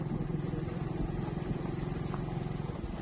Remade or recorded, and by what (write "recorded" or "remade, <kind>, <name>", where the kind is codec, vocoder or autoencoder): recorded